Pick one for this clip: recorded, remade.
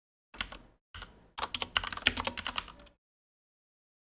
recorded